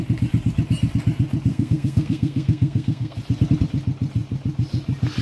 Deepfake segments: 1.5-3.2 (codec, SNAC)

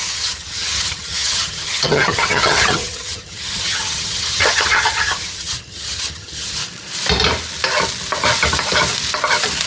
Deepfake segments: 0.0-6.6 (vocoder, HiFi-GAN)

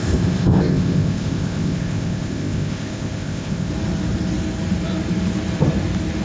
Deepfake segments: 0.0-3.7 (codec, ZipCodec)